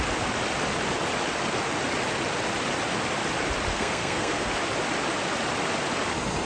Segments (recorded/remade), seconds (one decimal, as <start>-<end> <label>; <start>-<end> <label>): 0.0-3.7 recorded; 3.7-4.5 remade; 4.5-6.5 recorded